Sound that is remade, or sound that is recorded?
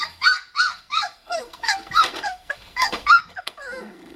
remade